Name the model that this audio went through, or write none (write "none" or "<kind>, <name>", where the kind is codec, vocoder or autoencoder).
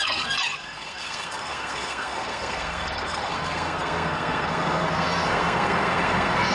codec, SNAC